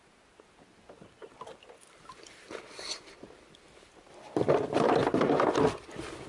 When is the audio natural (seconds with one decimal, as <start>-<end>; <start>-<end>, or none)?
0.0-6.3